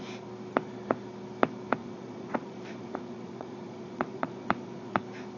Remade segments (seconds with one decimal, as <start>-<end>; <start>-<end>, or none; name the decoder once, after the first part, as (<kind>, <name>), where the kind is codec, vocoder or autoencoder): 1.8-5.0 (vocoder, Vocos)